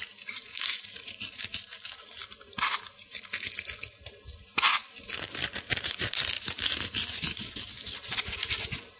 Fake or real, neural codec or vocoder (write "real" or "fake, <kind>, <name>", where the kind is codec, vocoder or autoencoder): fake, vocoder, BigVGAN v2